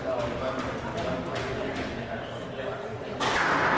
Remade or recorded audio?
recorded